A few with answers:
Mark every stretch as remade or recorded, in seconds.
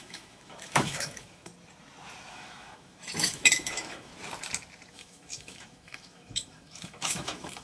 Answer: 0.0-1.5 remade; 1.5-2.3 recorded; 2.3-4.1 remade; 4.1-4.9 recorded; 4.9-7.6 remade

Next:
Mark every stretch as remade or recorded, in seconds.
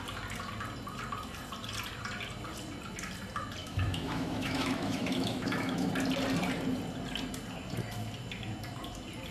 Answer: 0.0-3.6 recorded; 3.6-5.9 remade; 5.9-9.3 recorded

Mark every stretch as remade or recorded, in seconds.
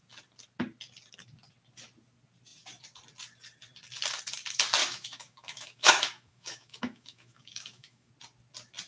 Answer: 0.0-4.8 recorded; 4.8-8.1 remade; 8.1-8.9 recorded